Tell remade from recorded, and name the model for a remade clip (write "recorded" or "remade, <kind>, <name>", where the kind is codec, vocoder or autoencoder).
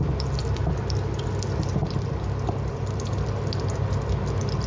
recorded